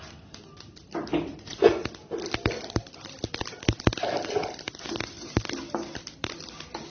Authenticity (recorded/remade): recorded